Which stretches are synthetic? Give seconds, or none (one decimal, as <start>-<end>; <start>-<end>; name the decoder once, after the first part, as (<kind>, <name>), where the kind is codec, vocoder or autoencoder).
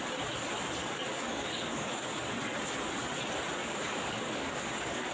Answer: 0.8-2.3 (codec, DAC); 3.6-5.1